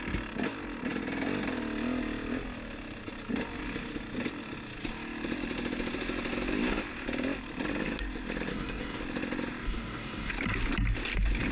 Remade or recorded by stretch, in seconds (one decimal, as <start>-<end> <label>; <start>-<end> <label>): 0.0-8.5 recorded; 8.5-9.0 remade; 9.0-9.6 recorded; 9.6-10.3 remade; 10.3-11.5 recorded